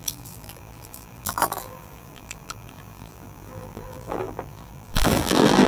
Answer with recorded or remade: remade